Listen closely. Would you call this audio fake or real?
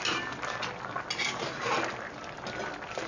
real